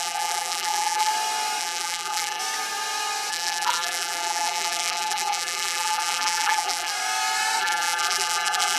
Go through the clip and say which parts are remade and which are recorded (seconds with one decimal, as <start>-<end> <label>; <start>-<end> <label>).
0.0-1.1 remade; 1.1-1.6 recorded; 1.6-2.4 remade; 2.4-3.3 recorded; 3.3-6.9 remade; 6.9-7.6 recorded; 7.6-8.8 remade